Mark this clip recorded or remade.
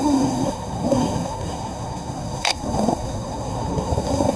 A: remade